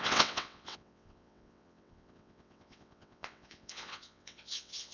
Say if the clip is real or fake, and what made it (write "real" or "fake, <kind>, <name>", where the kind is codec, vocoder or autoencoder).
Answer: fake, vocoder, WaveNeXt